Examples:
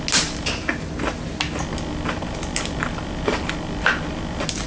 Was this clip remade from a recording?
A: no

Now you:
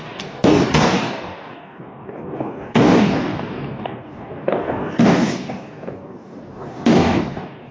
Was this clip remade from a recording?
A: yes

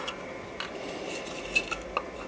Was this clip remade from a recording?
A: no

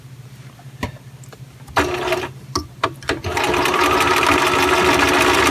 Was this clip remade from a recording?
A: no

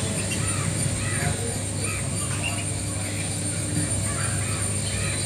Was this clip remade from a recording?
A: no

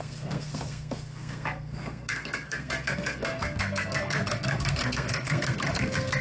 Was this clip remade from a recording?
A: yes